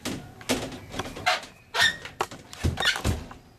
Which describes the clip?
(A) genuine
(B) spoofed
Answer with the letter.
A